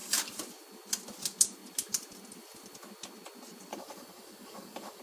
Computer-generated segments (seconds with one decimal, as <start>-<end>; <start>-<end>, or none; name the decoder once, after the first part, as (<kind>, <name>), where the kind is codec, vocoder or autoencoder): 3.7-5.0 (codec, DAC)